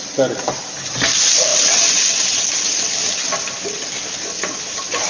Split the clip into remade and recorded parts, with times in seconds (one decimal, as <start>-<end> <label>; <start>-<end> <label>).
0.0-5.1 recorded